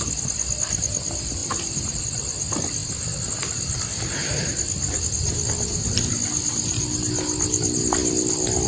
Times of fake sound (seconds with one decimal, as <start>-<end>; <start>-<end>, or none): 1.4-2.0